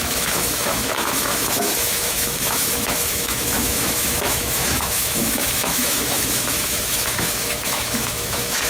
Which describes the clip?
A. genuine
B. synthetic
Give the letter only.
B